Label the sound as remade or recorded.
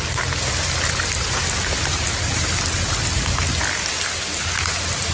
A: recorded